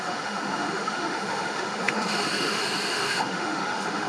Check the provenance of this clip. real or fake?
fake